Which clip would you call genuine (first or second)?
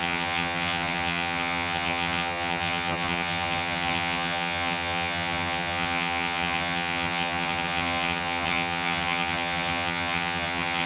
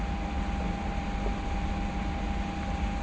second